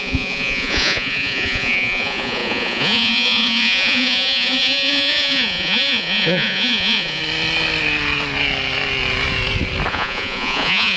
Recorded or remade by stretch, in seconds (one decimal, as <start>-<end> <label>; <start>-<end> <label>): 0.0-7.2 remade; 7.2-9.9 recorded; 9.9-11.0 remade